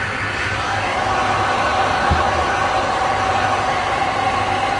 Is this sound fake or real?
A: real